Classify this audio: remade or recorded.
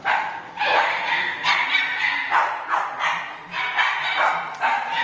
recorded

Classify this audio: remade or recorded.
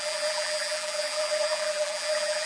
remade